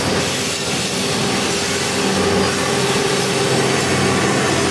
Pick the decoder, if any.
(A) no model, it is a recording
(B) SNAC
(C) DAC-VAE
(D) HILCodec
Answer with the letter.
A